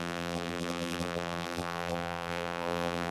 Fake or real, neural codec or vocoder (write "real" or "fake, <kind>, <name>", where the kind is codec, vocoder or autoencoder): fake, vocoder, BigVGAN v2